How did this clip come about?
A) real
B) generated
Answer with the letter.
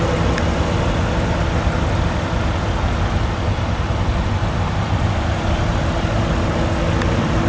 A